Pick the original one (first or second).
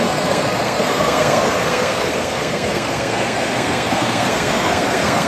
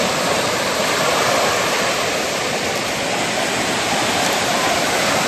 second